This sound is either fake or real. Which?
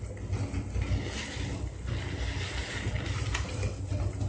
real